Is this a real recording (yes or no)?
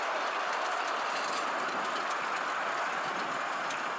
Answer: yes